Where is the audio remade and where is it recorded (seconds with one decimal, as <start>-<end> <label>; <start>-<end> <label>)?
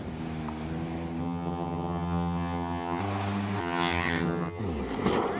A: 0.0-1.2 recorded; 1.2-3.0 remade; 3.0-3.6 recorded; 3.6-4.6 remade; 4.6-5.4 recorded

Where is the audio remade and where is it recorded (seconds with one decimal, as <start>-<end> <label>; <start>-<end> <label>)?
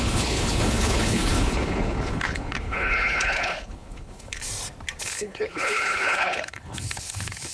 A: 0.0-4.4 remade; 4.4-5.0 recorded; 5.0-7.5 remade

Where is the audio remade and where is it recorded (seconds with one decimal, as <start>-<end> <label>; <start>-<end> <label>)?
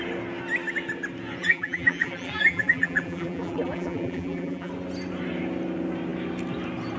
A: 0.0-1.4 recorded; 1.4-4.7 remade; 4.7-7.0 recorded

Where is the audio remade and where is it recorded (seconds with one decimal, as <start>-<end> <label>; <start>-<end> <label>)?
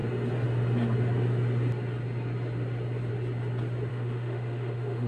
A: 0.0-3.9 recorded; 3.9-5.1 remade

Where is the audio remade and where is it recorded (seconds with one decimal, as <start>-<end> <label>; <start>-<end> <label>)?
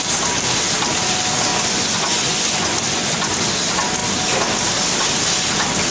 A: 0.0-1.5 recorded; 1.5-3.3 remade; 3.3-5.9 recorded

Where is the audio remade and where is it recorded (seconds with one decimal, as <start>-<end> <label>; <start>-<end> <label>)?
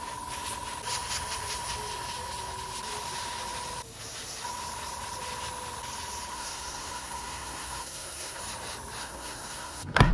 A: 0.0-6.3 recorded; 6.3-8.4 remade; 8.4-9.0 recorded; 9.0-10.1 remade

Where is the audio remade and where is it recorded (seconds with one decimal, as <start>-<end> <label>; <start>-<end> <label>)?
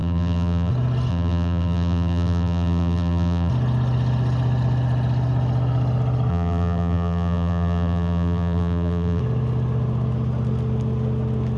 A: 0.0-0.7 remade; 0.7-1.1 recorded; 1.1-3.5 remade; 3.5-6.3 recorded; 6.3-9.2 remade; 9.2-11.6 recorded